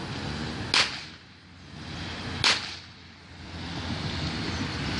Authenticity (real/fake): real